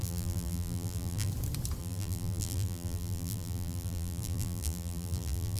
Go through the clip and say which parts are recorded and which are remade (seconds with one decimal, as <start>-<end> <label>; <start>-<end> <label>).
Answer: 0.0-1.3 remade; 1.3-1.8 recorded; 1.8-5.6 remade